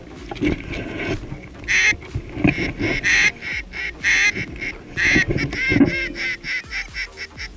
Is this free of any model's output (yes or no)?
yes